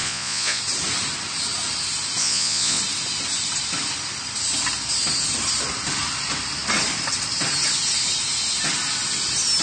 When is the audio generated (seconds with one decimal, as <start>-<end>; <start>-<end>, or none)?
0.0-0.6; 2.2-2.8